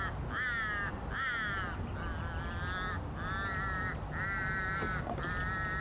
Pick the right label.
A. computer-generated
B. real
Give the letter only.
B